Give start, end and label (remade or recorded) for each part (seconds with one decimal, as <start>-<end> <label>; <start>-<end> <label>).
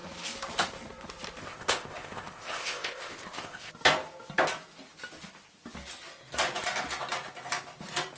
0.0-1.4 recorded; 1.4-3.7 remade; 3.7-8.2 recorded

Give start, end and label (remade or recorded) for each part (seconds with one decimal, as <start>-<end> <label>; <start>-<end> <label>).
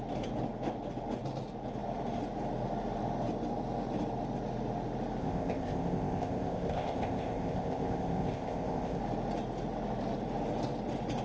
0.0-5.2 recorded; 5.2-9.0 remade; 9.0-11.2 recorded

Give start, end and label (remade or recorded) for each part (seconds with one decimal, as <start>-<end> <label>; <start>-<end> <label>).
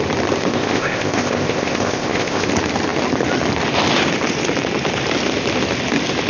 0.0-0.5 recorded; 0.5-2.5 remade; 2.5-6.3 recorded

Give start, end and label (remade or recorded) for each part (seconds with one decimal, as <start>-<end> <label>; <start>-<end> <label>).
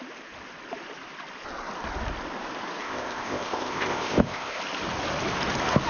0.0-2.8 recorded; 2.8-4.6 remade; 4.6-5.9 recorded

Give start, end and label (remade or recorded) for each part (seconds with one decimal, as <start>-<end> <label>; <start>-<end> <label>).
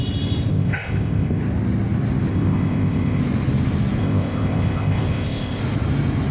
0.0-0.5 recorded; 0.5-1.4 remade; 1.4-2.3 recorded; 2.3-3.2 remade; 3.2-4.0 recorded; 4.0-5.6 remade; 5.6-6.3 recorded